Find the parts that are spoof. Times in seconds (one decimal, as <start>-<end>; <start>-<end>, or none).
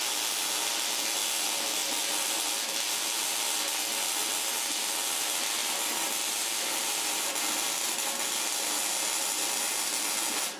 5.6-7.3